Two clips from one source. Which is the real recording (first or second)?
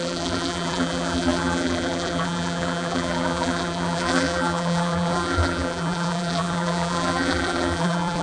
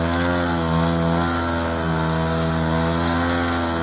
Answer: second